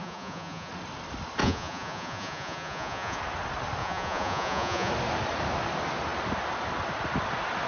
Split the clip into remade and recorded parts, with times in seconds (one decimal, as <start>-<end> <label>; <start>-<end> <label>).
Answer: 0.0-0.7 remade; 0.7-1.4 recorded; 1.4-3.2 remade; 3.2-3.8 recorded; 3.8-4.9 remade; 4.9-7.7 recorded